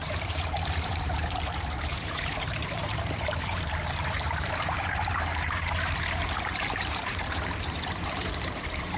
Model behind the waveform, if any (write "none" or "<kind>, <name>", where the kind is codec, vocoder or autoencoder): vocoder, BigVGAN v2